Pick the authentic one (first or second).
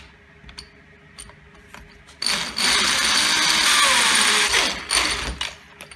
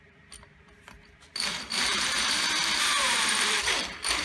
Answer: first